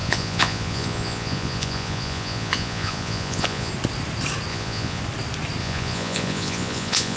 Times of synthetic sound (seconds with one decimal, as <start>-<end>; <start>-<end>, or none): 0.0-3.7; 4.5-5.0; 5.6-7.2